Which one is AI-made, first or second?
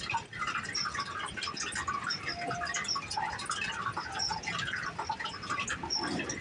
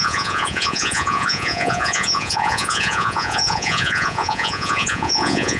second